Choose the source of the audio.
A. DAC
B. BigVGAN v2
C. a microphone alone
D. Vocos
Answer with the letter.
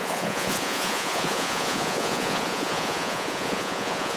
D